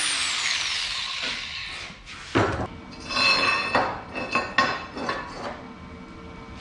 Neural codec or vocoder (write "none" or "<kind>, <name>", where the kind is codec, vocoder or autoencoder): none